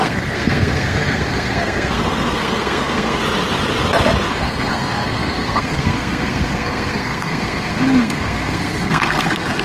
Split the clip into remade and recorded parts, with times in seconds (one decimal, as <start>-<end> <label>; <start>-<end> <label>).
0.0-3.2 remade; 3.2-4.3 recorded; 4.3-9.6 remade